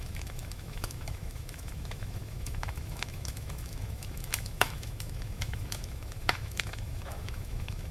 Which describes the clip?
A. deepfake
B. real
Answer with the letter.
A